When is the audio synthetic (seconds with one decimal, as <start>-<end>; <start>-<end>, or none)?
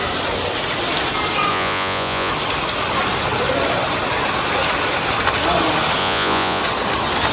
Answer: 1.5-2.3; 6.0-6.6